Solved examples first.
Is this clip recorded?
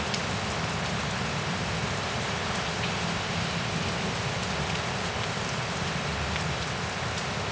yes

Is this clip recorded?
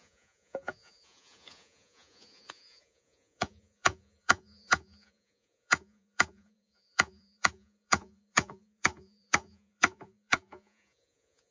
no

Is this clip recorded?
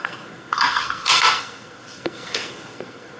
no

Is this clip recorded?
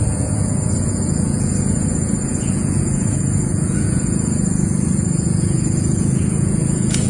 no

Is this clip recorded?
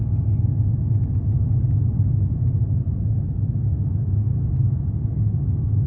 yes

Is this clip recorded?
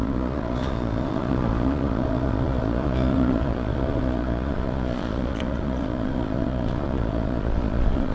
no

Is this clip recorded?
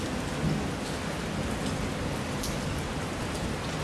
yes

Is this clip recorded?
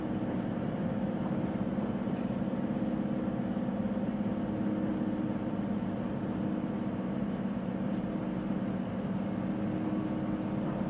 yes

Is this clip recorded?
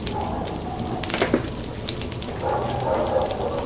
yes